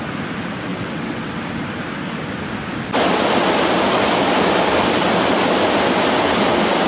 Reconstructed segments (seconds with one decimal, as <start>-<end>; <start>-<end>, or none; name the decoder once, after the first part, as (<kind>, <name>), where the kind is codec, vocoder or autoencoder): 0.7-1.4 (vocoder, WaveNeXt)